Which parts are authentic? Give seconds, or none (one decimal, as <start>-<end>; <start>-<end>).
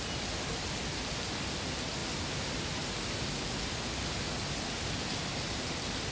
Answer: 0.0-6.1